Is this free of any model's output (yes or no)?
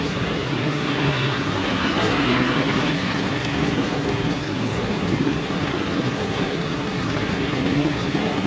no